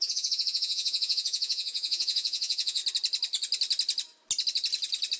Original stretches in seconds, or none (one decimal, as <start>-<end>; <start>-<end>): 2.8-5.2